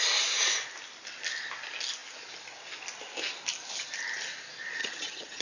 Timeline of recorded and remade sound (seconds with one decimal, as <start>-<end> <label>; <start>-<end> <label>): 0.0-4.8 recorded; 4.8-5.4 remade

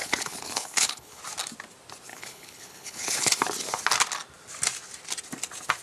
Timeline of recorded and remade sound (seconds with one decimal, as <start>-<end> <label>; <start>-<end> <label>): 0.0-1.2 remade; 1.2-2.1 recorded; 2.1-3.3 remade; 3.3-5.8 recorded

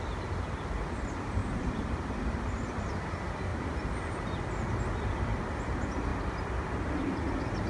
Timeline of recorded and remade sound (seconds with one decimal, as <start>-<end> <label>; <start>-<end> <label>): 0.0-1.4 recorded; 1.4-2.7 remade; 2.7-3.5 recorded; 3.5-4.4 remade; 4.4-6.1 recorded; 6.1-6.9 remade; 6.9-7.7 recorded

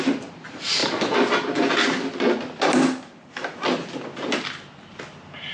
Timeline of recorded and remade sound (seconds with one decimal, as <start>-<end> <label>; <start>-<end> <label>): 0.0-5.5 recorded

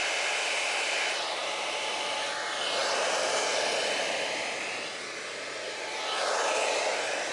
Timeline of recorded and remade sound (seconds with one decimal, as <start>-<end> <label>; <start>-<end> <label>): 0.0-7.3 recorded

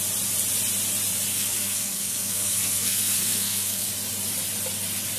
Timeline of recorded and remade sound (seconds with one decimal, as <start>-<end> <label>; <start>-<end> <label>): 0.0-1.3 recorded; 1.3-3.9 remade; 3.9-5.2 recorded

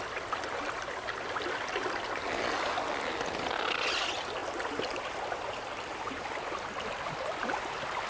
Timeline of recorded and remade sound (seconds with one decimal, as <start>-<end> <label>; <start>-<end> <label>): 0.0-8.1 recorded

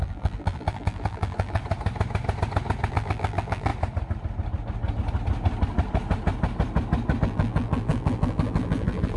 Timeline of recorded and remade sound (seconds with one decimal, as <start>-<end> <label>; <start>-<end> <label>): 0.0-1.6 remade; 1.6-2.9 recorded; 2.9-3.7 remade; 3.7-7.2 recorded; 7.2-9.2 remade